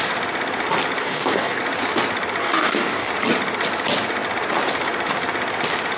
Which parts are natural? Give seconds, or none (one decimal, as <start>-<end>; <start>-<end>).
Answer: 0.0-1.0; 1.6-2.4; 3.1-6.0